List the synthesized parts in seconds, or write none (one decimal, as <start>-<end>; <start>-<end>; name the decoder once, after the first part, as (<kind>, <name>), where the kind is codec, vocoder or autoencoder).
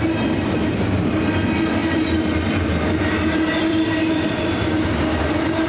1.8-4.4 (vocoder, BigVGAN v2)